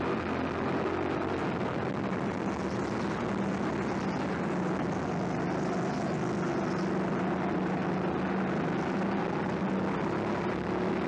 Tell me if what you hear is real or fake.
real